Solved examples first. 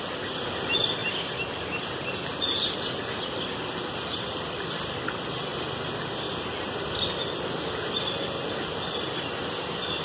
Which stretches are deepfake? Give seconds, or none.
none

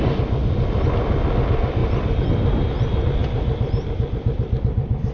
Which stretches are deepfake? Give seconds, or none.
1.8-2.7 (vocoder, BigVGAN v2); 3.2-4.6

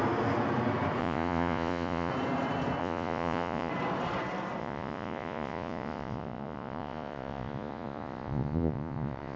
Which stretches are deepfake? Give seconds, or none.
1.0-2.1 (vocoder, Vocos); 2.8-3.7; 4.6-9.4

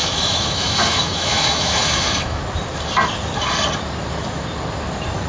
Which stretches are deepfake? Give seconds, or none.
0.0-2.4 (autoencoder, DAC-VAE)

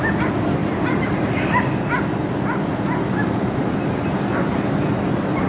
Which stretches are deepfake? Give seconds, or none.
none

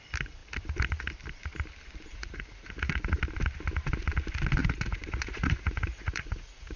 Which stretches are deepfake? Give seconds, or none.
2.1-3.2 (vocoder, Vocos); 4.6-6.8